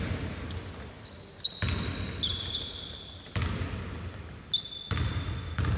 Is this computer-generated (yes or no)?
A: no